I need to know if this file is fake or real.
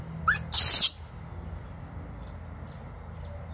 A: real